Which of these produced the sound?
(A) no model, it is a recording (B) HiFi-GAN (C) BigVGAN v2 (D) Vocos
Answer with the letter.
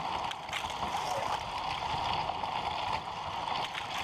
A